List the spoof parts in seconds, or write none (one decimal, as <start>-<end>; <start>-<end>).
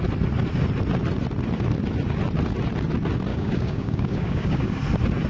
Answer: 3.3-4.8